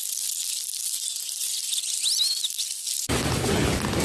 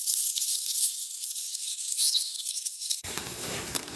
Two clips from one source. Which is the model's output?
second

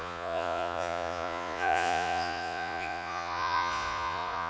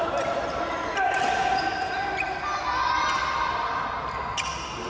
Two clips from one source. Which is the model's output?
first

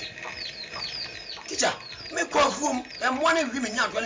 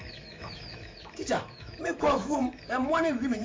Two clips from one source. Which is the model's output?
second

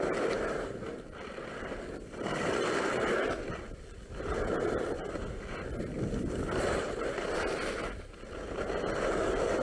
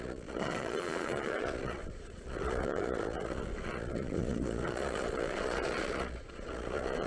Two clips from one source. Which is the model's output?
second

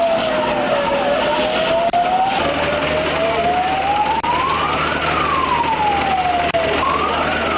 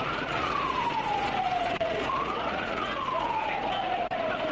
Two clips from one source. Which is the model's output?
second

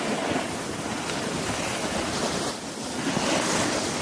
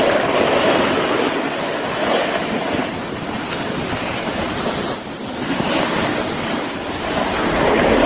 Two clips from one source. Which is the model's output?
second